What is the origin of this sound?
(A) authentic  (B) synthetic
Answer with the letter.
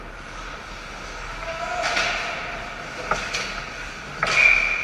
A